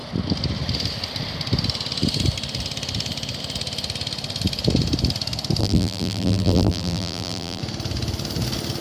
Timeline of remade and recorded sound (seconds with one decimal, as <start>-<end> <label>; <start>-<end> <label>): 0.0-5.6 recorded; 5.6-7.6 remade; 7.6-8.8 recorded